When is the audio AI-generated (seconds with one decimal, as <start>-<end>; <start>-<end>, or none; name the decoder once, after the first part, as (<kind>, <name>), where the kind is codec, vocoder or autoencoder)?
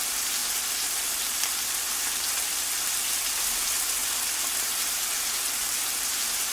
0.0-4.0 (vocoder, BigVGAN v2); 4.6-6.5